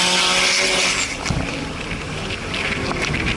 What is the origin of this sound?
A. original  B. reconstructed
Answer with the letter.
A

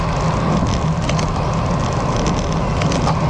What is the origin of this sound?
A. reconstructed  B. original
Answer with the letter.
B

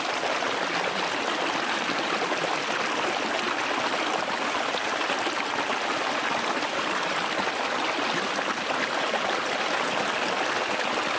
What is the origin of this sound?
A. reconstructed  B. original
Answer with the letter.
B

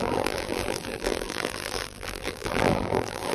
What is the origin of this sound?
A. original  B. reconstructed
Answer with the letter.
B